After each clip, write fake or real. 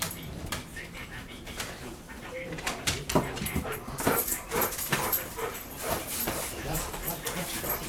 fake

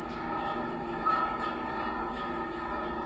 real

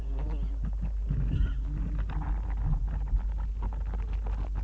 real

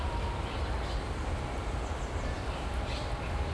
real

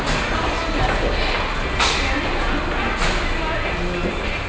real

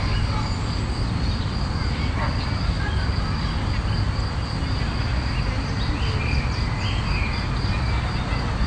real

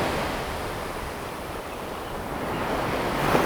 real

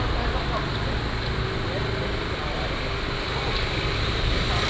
real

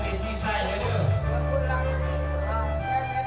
real